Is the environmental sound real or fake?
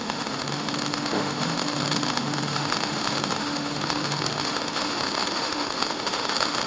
fake